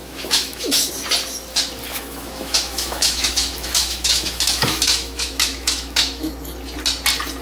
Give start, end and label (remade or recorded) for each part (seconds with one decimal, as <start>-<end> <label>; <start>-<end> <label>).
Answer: 0.0-0.9 remade; 0.9-1.9 recorded; 1.9-6.3 remade; 6.3-7.4 recorded